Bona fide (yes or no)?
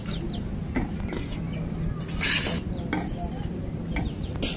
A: yes